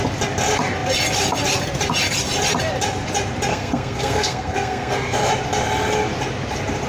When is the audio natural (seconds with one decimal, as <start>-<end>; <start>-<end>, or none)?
0.0-3.5; 5.3-6.9